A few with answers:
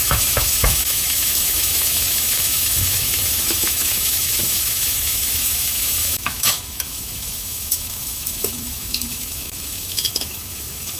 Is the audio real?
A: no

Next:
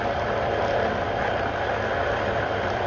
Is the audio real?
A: no